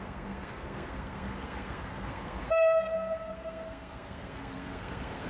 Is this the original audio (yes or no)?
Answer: no